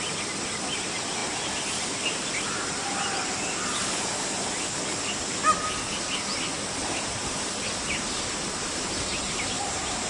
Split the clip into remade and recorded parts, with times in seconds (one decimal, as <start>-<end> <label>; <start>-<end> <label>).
0.0-6.8 recorded; 6.8-10.1 remade